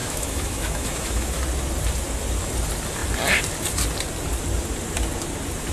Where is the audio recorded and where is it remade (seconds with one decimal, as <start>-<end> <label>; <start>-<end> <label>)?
0.0-1.4 remade; 1.4-5.7 recorded